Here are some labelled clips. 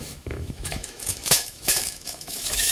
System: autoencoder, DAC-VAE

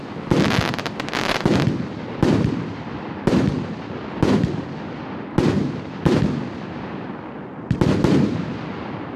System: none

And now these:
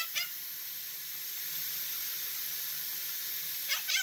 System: none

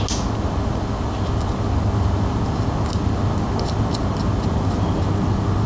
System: none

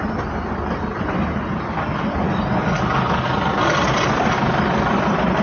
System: none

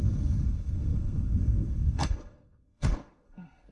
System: codec, SNAC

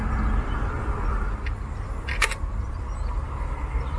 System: none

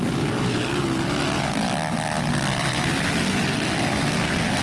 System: none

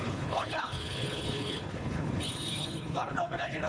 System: codec, HILCodec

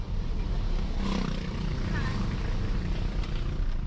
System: none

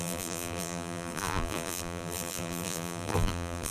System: vocoder, BigVGAN v2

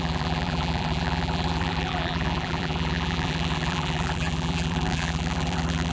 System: vocoder, BigVGAN v2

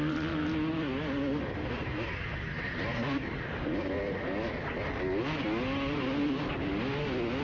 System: none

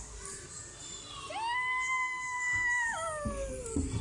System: none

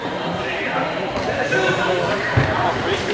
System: none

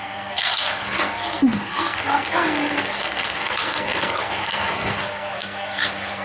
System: codec, SNAC